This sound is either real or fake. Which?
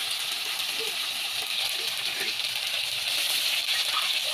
real